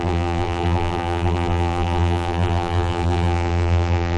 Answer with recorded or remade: remade